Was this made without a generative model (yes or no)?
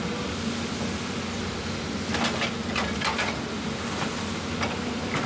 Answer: yes